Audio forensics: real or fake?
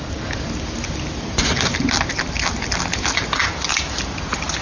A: real